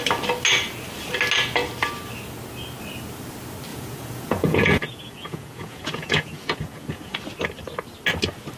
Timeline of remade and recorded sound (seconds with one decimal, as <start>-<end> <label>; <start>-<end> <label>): 0.0-3.7 recorded; 3.7-7.2 remade; 7.2-8.6 recorded